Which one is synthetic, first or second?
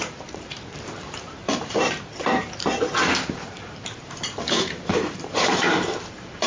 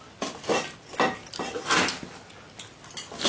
first